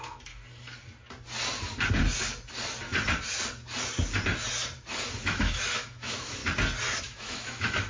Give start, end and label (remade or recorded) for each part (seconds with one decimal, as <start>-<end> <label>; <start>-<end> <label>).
0.0-0.4 remade; 0.4-5.1 recorded; 5.1-6.4 remade; 6.4-7.0 recorded; 7.0-7.9 remade